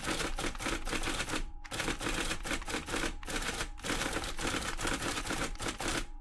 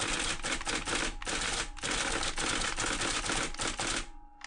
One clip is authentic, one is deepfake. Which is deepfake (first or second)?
first